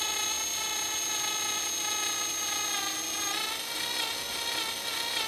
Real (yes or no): yes